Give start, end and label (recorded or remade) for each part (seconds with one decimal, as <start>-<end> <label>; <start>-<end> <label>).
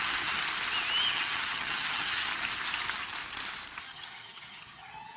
0.0-0.4 remade; 0.4-1.1 recorded; 1.1-2.3 remade; 2.3-3.8 recorded; 3.8-5.2 remade